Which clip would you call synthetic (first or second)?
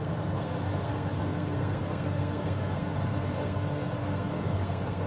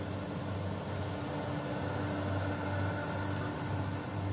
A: first